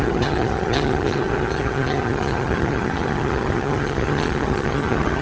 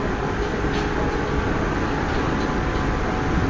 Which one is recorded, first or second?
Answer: second